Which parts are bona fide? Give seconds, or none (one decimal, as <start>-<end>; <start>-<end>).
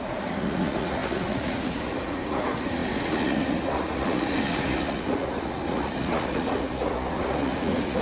none